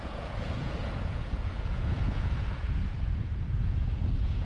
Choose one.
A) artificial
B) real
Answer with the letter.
A